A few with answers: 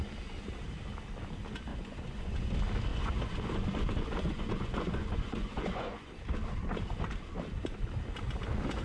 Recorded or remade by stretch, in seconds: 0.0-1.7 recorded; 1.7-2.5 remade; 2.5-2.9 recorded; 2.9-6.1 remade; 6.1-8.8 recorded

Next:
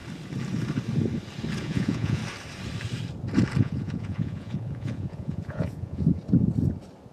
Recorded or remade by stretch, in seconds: 0.0-1.6 recorded; 1.6-2.2 remade; 2.2-3.6 recorded; 3.6-6.2 remade; 6.2-7.1 recorded

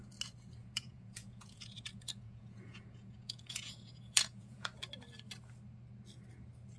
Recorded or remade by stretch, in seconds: 0.0-0.6 recorded; 0.6-4.7 remade; 4.7-6.8 recorded

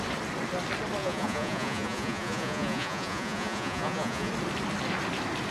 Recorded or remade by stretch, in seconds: 0.0-1.0 recorded; 1.0-4.3 remade; 4.3-5.5 recorded

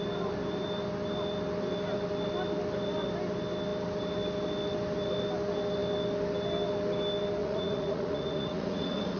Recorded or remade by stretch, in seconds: 0.0-7.4 recorded; 7.4-9.2 remade

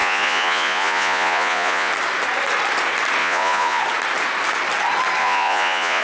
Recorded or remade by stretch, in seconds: 0.0-1.9 remade; 1.9-3.2 recorded; 3.2-3.8 remade; 3.8-5.2 recorded; 5.2-6.0 remade